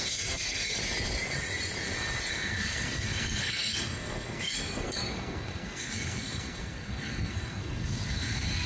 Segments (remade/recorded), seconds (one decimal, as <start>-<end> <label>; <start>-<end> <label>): 0.0-0.8 remade; 0.8-2.3 recorded; 2.3-8.7 remade